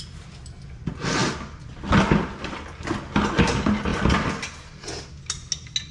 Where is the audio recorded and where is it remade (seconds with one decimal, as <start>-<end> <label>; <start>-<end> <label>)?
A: 0.0-5.9 recorded